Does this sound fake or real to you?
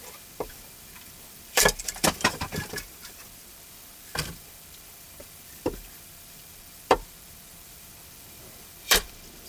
fake